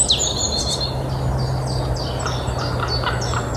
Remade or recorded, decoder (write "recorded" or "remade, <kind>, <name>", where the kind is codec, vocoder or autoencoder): recorded